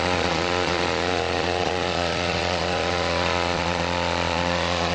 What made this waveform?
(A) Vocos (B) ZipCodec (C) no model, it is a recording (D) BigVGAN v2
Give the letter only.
A